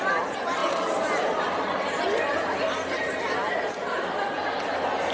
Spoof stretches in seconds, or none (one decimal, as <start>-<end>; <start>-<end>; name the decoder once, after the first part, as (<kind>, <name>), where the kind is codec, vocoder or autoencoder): 0.6-3.2 (vocoder, BigVGAN v2)